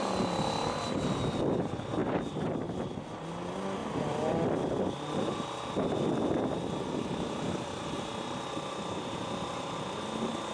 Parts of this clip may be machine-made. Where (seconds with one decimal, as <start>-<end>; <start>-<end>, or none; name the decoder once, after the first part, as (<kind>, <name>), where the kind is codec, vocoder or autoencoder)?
2.0-2.5 (vocoder, BigVGAN v2)